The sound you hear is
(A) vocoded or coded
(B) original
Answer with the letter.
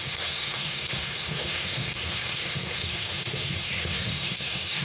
A